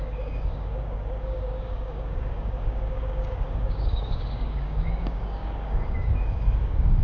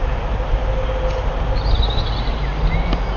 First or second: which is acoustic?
second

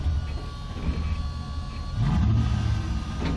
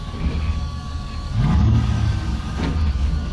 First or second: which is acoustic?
first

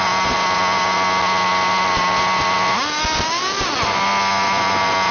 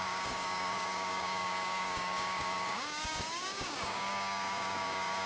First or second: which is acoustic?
first